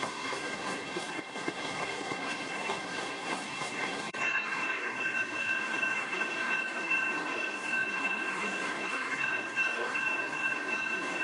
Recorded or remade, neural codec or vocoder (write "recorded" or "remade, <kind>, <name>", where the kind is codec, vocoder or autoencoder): remade, codec, SNAC